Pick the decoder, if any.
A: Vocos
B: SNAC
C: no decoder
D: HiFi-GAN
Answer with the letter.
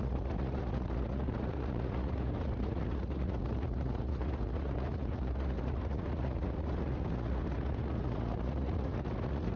A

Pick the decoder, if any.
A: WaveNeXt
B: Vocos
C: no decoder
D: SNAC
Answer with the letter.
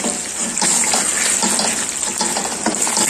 C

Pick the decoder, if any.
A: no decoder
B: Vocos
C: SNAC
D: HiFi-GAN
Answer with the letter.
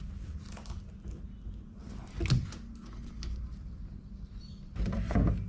A